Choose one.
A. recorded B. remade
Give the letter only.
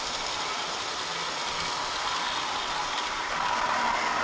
A